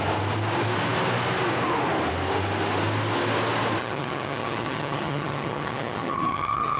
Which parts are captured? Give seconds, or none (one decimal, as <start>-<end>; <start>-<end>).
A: 0.0-3.8